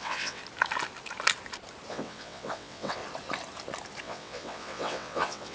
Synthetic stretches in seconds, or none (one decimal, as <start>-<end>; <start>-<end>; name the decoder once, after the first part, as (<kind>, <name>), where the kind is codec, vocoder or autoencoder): 0.0-0.4 (vocoder, WaveNeXt); 1.9-3.0; 4.0-5.5